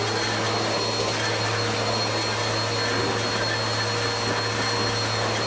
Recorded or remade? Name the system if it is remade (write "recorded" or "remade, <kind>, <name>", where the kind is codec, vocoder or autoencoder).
recorded